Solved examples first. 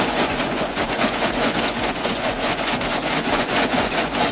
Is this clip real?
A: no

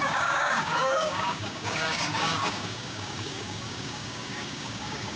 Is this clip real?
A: no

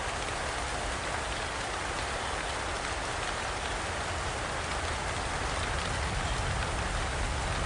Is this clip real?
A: yes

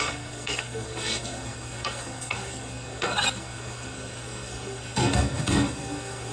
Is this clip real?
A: no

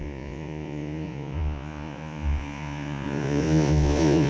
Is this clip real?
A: no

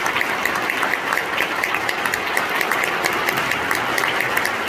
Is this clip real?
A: yes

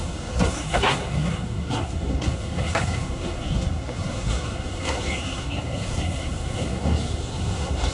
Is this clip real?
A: no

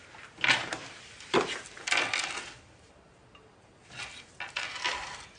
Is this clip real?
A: yes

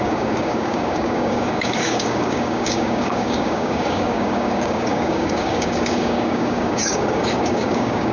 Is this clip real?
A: no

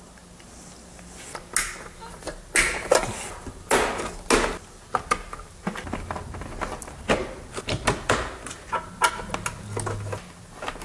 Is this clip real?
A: yes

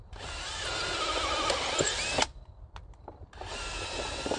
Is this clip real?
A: yes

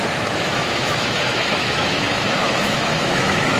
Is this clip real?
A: no